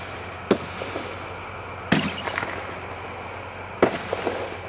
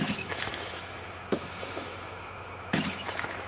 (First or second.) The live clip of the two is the first